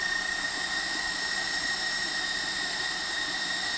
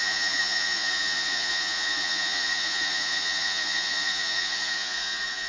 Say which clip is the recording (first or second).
first